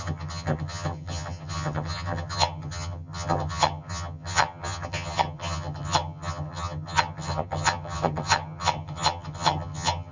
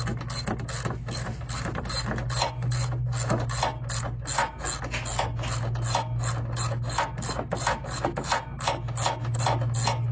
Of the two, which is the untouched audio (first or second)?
second